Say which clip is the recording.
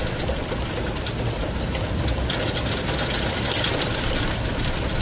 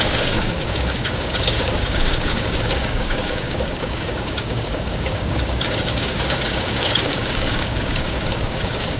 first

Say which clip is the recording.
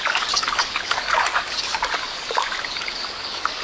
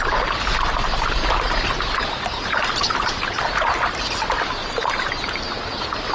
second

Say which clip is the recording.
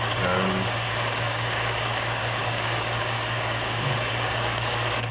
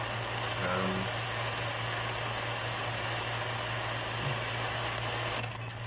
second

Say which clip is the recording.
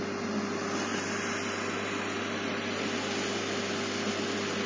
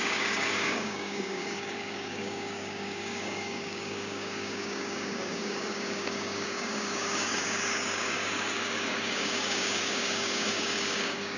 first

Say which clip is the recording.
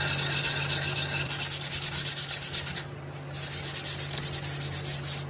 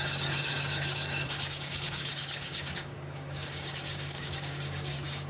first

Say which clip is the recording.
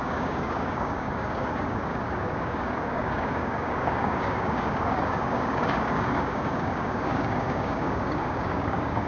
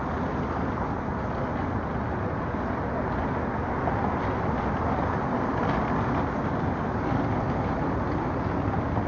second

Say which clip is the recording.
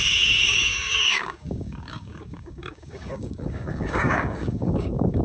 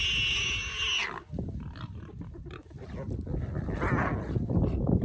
second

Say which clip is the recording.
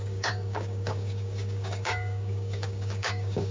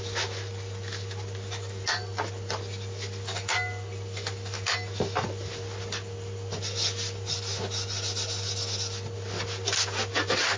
second